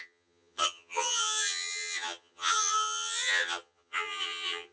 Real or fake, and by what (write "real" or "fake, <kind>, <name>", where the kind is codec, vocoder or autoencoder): fake, vocoder, HiFi-GAN